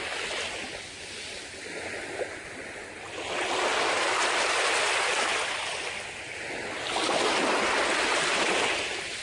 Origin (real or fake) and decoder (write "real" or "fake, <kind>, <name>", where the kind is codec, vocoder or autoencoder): real